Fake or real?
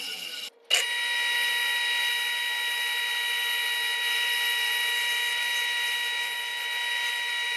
real